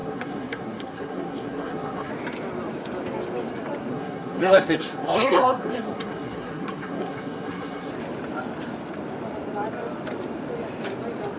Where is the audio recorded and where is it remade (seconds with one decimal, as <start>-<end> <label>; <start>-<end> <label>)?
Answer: 0.0-2.1 remade; 2.1-3.9 recorded; 3.9-7.9 remade; 7.9-11.4 recorded